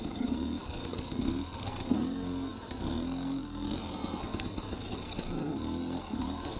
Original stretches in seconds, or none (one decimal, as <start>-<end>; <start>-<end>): none